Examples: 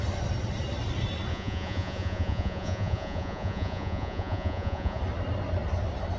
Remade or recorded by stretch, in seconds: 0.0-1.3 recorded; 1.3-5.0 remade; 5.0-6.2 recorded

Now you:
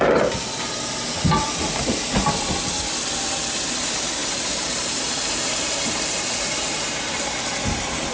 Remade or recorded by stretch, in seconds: 0.0-4.2 recorded; 4.2-7.3 remade; 7.3-8.1 recorded

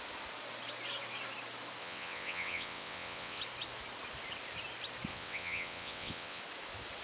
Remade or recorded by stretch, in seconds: 0.0-1.8 recorded; 1.8-3.4 remade; 3.4-5.1 recorded; 5.1-6.4 remade; 6.4-7.0 recorded

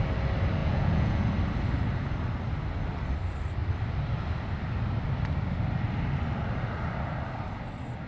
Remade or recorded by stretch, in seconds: 0.0-0.6 recorded; 0.6-1.3 remade; 1.3-8.1 recorded

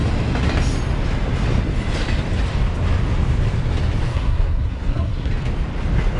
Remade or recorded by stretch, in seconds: 0.0-4.1 recorded; 4.1-5.3 remade; 5.3-6.2 recorded

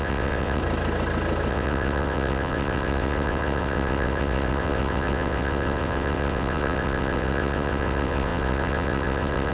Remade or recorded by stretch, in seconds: 0.0-0.6 remade; 0.6-1.5 recorded; 1.5-9.5 remade

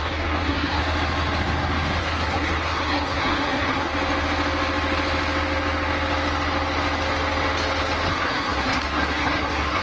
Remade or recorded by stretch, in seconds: 0.0-0.8 remade; 0.8-2.0 recorded; 2.0-3.9 remade; 3.9-8.1 recorded; 8.1-9.8 remade